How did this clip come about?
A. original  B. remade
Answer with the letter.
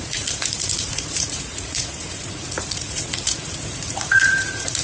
B